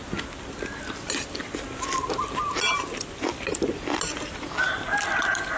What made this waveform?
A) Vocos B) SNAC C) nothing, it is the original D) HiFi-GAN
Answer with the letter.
C